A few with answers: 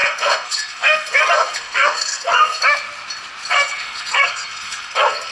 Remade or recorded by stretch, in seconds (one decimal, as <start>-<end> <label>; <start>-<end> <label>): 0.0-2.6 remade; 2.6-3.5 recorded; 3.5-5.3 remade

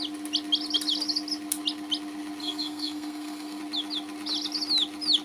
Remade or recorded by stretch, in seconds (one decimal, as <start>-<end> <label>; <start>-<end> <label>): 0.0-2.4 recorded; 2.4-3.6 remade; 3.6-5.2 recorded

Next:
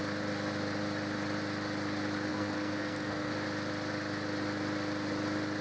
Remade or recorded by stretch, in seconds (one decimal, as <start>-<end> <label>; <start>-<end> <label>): 0.0-2.3 recorded; 2.3-3.3 remade; 3.3-5.6 recorded